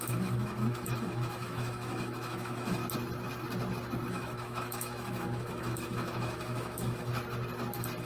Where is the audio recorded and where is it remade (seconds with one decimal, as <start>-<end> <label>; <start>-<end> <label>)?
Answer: 0.0-2.8 remade; 2.8-4.1 recorded; 4.1-7.1 remade; 7.1-8.0 recorded